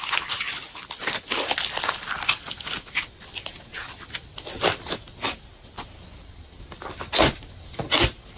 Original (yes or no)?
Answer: yes